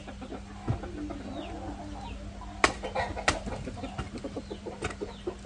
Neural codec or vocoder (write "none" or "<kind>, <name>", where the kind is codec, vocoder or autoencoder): none